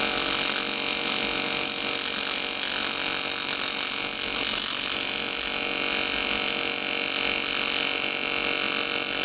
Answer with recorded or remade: recorded